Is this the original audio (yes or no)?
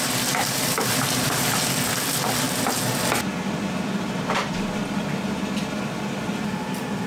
yes